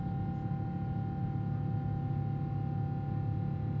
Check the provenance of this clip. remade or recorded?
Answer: recorded